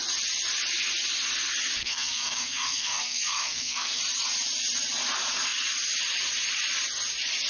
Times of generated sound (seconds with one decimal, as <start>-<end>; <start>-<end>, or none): 1.8-4.0